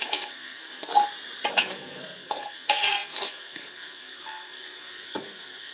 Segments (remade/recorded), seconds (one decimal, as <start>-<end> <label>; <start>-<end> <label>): 0.0-0.9 remade; 0.9-1.5 recorded; 1.5-5.7 remade